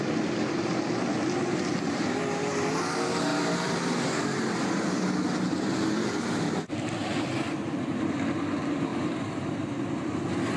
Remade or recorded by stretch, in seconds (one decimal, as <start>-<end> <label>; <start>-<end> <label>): 0.0-3.3 recorded; 3.3-4.9 remade; 4.9-10.6 recorded